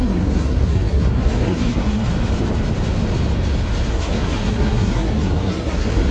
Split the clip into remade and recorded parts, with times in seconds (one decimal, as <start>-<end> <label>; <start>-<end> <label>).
0.0-2.1 remade; 2.1-3.9 recorded; 3.9-6.1 remade